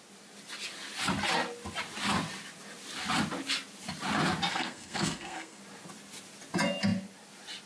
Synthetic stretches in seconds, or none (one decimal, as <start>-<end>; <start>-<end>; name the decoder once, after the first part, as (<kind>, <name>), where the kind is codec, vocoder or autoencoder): 4.5-5.6 (codec, SNAC)